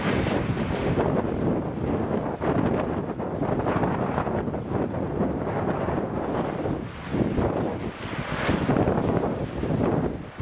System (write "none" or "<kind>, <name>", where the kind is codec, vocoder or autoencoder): none